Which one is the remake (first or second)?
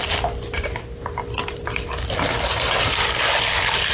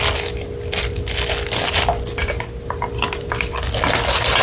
first